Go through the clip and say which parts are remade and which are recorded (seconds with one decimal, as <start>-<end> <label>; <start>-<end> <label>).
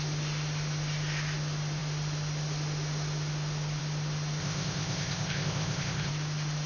0.0-4.4 recorded; 4.4-6.1 remade; 6.1-6.7 recorded